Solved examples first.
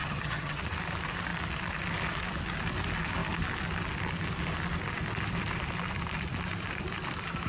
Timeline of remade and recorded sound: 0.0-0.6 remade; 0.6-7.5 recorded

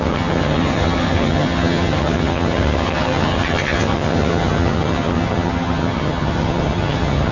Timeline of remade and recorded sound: 0.0-7.3 remade